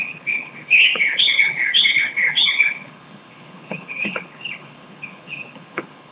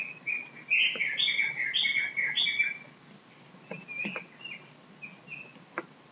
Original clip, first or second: second